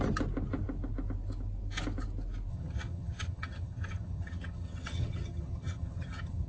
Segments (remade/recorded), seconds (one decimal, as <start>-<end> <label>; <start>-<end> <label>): 0.0-2.5 recorded; 2.5-6.5 remade